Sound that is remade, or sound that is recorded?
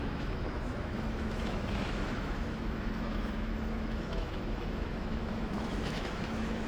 remade